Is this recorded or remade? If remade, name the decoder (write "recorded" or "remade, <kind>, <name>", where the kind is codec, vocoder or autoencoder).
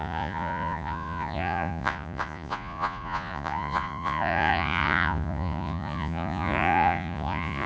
remade, vocoder, Vocos